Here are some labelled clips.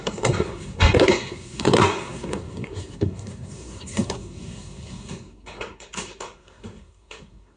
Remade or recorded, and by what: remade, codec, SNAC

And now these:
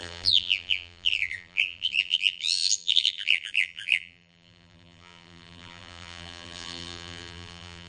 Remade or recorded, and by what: remade, vocoder, BigVGAN v2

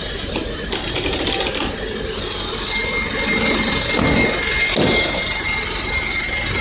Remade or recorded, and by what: recorded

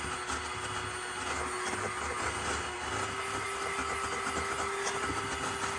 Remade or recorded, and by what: recorded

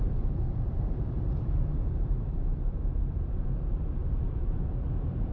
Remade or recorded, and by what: remade, vocoder, BigVGAN v2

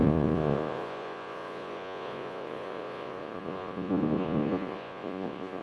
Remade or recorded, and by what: remade, vocoder, Vocos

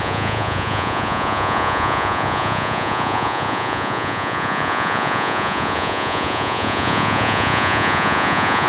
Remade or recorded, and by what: remade, vocoder, Vocos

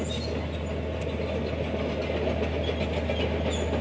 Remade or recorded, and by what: recorded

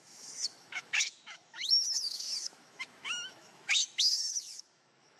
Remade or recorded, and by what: remade, autoencoder, DAC-VAE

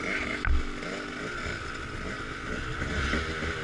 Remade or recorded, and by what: recorded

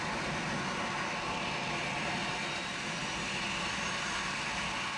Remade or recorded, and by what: recorded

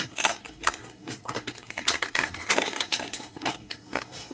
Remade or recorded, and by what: remade, codec, SNAC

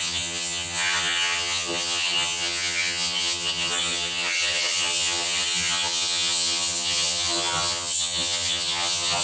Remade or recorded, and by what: remade, vocoder, HiFi-GAN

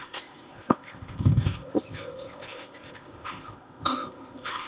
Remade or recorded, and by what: remade, codec, ZipCodec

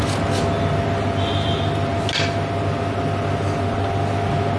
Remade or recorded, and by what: recorded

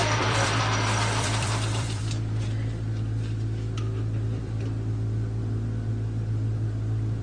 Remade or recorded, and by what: remade, vocoder, BigVGAN v2